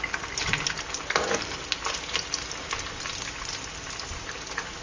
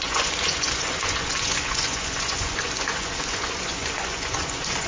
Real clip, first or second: first